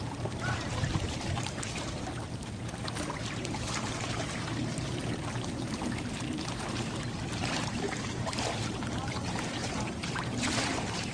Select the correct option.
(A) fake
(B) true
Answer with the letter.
A